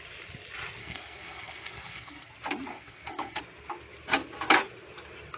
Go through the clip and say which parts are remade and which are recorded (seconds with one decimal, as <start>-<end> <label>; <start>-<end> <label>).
0.0-0.8 recorded; 0.8-2.3 remade; 2.3-2.7 recorded; 2.7-3.4 remade; 3.4-5.4 recorded